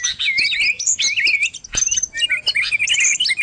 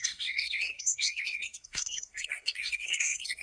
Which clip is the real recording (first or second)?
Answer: first